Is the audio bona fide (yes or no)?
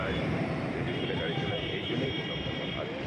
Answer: no